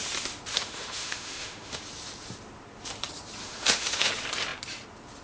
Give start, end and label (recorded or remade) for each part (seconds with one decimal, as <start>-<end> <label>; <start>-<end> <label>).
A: 0.0-0.5 recorded; 0.5-1.8 remade; 1.8-3.4 recorded; 3.4-4.1 remade; 4.1-5.2 recorded